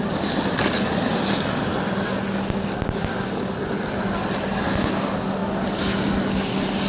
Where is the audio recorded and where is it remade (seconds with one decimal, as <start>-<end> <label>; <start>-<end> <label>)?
0.0-6.9 recorded